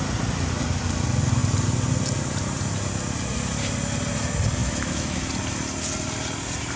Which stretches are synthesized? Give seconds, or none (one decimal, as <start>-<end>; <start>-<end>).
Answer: 4.6-5.3

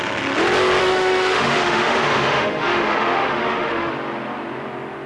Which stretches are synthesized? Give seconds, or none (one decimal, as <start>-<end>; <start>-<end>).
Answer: 0.8-3.9

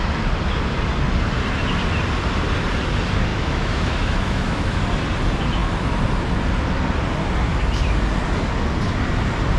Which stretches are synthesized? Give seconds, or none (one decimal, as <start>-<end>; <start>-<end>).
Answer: 3.3-4.8

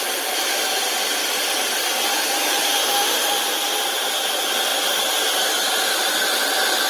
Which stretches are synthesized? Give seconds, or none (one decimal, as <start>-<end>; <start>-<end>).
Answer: 2.8-3.4

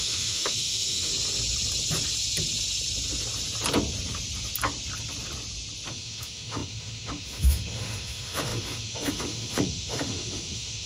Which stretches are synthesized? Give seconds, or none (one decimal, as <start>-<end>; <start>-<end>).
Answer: 0.0-1.1; 5.9-10.9

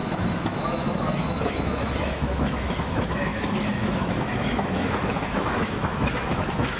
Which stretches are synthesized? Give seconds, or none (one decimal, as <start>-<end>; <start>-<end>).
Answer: 0.0-6.8

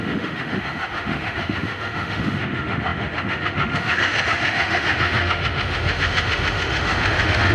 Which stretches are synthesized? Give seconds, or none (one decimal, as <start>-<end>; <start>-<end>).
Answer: 0.0-7.5